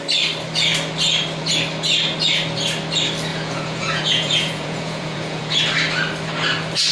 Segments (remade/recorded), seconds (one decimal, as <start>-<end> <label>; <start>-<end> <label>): 0.0-3.3 recorded; 3.3-5.6 remade; 5.6-6.9 recorded